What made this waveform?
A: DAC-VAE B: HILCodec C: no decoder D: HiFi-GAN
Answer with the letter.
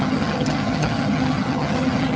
D